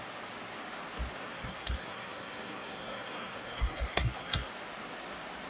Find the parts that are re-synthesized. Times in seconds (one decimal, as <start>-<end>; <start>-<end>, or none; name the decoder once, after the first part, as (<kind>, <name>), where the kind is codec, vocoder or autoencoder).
1.2-4.5 (codec, SNAC)